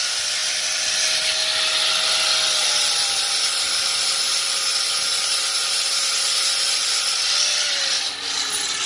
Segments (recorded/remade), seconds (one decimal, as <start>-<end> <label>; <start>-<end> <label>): 0.0-2.6 recorded; 2.6-7.4 remade; 7.4-8.9 recorded